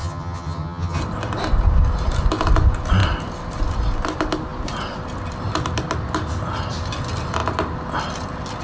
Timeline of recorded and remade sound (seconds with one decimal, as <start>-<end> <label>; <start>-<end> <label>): 0.0-1.0 remade; 1.0-8.6 recorded